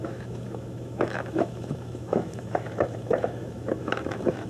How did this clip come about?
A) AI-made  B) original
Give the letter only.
A